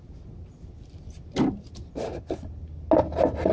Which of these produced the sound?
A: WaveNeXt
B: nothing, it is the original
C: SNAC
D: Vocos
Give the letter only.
B